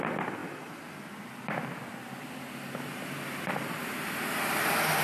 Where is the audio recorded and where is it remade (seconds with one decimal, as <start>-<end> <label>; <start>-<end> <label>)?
0.0-5.0 recorded

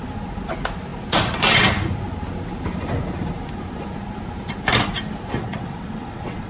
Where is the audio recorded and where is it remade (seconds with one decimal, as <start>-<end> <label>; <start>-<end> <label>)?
0.0-5.4 recorded; 5.4-6.5 remade

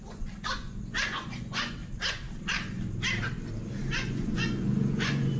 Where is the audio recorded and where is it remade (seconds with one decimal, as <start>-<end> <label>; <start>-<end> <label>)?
0.0-1.8 remade; 1.8-3.9 recorded; 3.9-5.4 remade

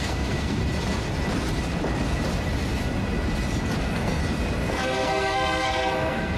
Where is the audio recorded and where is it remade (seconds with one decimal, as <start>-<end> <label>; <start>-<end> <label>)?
0.0-0.6 remade; 0.6-3.8 recorded; 3.8-4.2 remade; 4.2-4.7 recorded; 4.7-6.4 remade